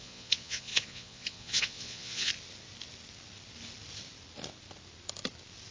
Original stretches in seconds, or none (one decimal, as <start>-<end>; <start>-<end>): 2.3-5.7